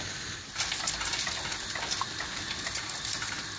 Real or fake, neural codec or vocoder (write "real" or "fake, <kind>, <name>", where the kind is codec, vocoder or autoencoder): real